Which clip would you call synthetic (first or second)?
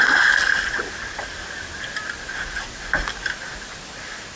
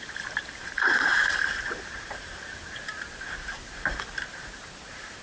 second